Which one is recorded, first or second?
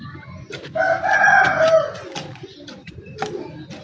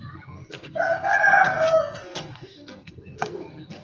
first